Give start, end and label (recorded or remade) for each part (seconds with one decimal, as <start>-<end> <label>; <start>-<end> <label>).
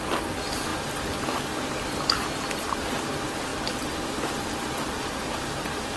0.0-6.0 recorded